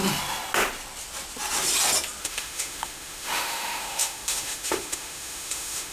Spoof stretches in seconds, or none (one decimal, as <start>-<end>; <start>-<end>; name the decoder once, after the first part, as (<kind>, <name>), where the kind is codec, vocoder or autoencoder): 2.2-5.9 (autoencoder, DAC-VAE)